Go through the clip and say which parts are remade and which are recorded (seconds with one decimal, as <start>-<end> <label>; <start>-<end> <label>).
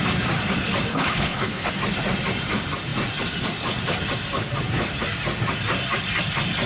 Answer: 0.0-0.9 recorded; 0.9-1.7 remade; 1.7-6.7 recorded